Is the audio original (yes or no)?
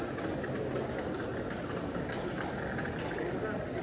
yes